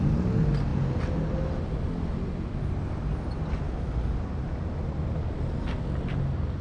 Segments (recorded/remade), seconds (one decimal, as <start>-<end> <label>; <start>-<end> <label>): 0.0-6.6 recorded

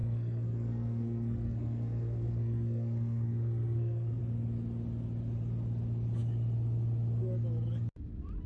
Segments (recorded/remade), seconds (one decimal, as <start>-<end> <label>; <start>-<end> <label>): 0.0-4.2 remade; 4.2-8.5 recorded

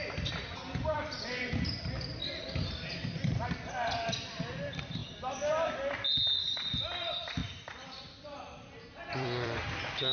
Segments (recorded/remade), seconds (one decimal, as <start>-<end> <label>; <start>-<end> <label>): 0.0-5.0 remade; 5.0-6.5 recorded; 6.5-7.4 remade; 7.4-9.1 recorded; 9.1-10.1 remade

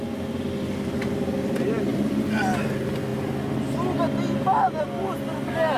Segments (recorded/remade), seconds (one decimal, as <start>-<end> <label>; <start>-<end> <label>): 0.0-5.8 recorded

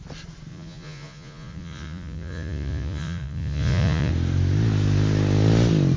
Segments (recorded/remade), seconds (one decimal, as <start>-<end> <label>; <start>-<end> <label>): 0.0-0.5 recorded; 0.5-4.1 remade; 4.1-6.0 recorded

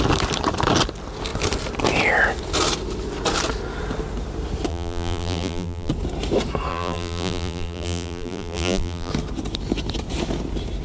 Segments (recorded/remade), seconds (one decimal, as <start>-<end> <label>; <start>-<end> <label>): 0.0-4.7 recorded; 4.7-5.9 remade; 5.9-6.7 recorded; 6.7-9.1 remade; 9.1-10.8 recorded

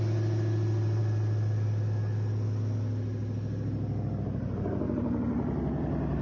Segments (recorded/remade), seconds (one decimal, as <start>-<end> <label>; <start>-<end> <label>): 0.0-6.2 recorded